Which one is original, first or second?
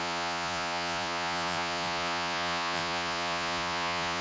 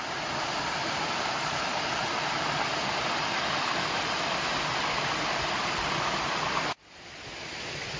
second